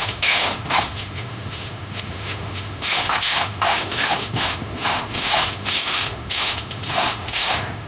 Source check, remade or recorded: remade